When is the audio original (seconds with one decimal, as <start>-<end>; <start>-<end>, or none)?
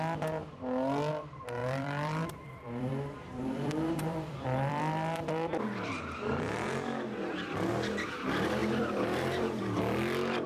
0.0-1.6; 6.0-8.6